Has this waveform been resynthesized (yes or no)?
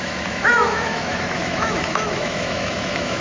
yes